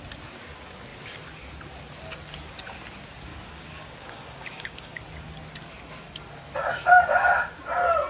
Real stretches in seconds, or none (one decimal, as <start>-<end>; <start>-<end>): 0.0-3.3; 5.0-8.1